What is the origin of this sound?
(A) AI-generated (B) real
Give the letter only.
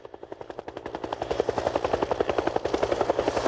B